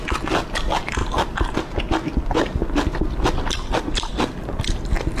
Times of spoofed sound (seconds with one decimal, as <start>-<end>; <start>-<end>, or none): 1.0-1.6; 2.6-4.1